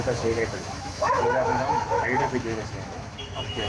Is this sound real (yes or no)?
no